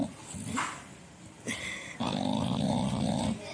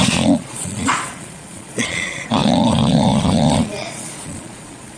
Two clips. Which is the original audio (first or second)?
first